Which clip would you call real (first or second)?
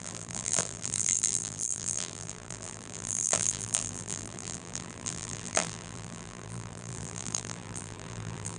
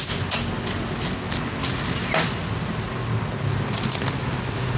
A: second